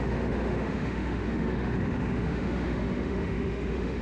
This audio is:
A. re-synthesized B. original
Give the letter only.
A